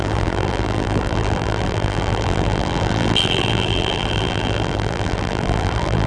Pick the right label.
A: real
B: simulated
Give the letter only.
B